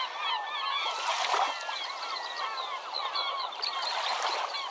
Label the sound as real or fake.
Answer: real